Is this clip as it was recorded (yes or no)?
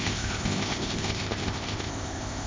no